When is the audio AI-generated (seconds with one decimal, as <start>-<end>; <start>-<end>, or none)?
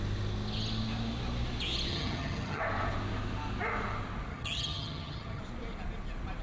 1.9-2.6; 4.3-5.4